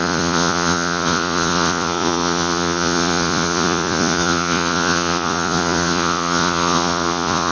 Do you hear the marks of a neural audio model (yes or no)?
yes